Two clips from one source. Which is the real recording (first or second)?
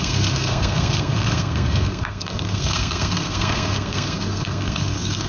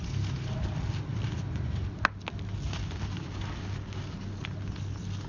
second